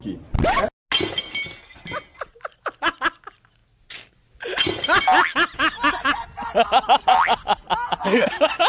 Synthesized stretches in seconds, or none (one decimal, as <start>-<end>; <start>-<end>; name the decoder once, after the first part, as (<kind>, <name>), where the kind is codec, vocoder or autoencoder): none